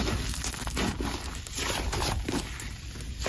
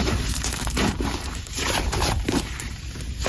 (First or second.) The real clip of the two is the first